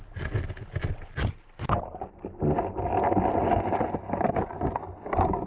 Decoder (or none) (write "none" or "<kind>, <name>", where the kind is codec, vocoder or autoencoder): none